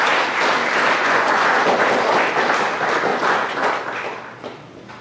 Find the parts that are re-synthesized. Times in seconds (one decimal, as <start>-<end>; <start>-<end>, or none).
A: 1.0-1.6; 3.1-3.7